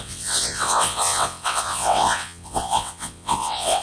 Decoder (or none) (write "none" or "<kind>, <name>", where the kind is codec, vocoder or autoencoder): vocoder, WaveNeXt